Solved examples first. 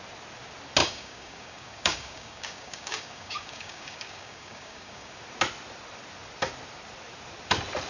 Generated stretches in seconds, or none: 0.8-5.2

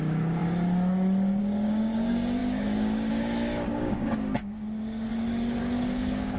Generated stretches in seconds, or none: 0.0-5.1; 5.6-6.4

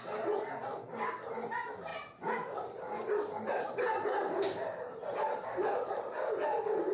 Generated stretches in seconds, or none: 1.9-6.0

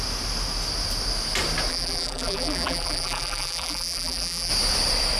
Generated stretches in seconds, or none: 1.7-4.5

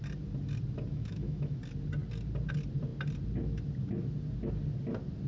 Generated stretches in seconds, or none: 0.9-1.6

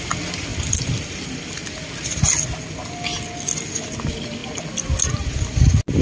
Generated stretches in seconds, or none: none

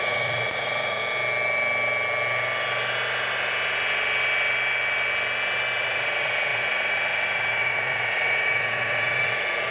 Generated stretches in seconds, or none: 0.0-1.0; 5.8-9.7